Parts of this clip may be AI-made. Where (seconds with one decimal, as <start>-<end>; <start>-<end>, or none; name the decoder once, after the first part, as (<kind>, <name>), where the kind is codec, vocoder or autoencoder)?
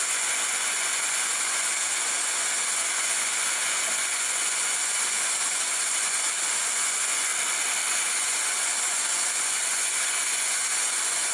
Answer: 0.0-7.3 (vocoder, Vocos); 7.9-11.3